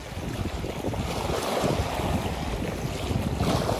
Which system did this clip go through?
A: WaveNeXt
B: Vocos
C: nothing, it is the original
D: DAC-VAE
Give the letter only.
C